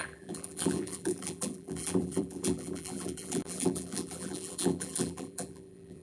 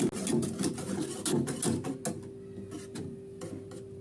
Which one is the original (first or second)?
second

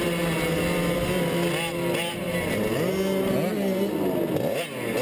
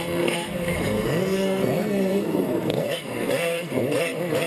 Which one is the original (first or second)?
first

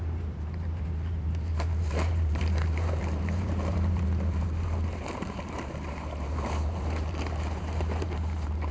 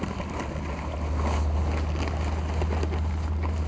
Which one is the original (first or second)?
second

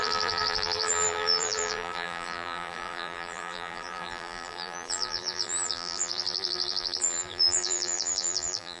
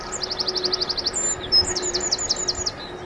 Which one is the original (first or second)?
second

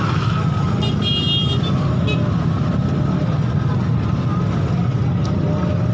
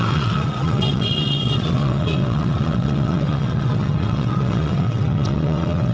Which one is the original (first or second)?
first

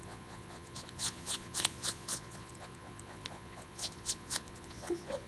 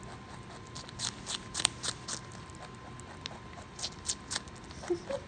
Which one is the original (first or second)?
second